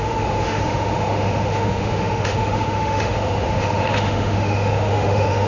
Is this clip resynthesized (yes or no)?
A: yes